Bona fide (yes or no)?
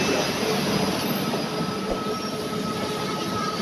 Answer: yes